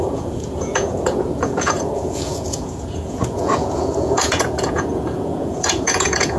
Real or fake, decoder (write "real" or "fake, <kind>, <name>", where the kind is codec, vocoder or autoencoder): fake, vocoder, Vocos